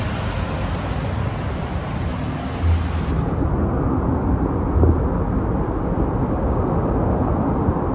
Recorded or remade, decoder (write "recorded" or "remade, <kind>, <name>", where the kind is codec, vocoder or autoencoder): recorded